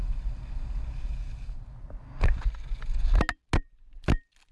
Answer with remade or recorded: recorded